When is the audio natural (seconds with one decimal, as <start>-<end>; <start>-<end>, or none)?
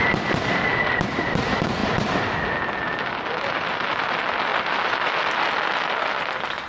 0.0-6.7